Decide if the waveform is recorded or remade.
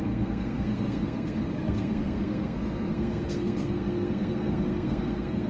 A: remade